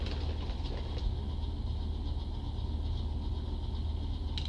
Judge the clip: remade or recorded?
recorded